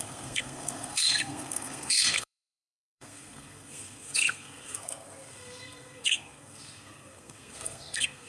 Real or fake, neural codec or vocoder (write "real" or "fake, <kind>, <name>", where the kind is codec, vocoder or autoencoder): fake, codec, SNAC